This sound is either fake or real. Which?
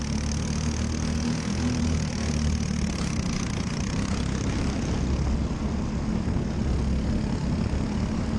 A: real